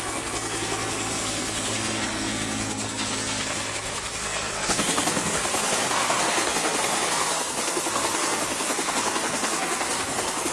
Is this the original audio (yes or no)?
no